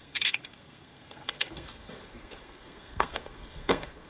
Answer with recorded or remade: remade